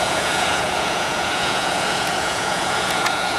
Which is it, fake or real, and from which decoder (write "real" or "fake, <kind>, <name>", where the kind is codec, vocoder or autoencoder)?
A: fake, vocoder, Vocos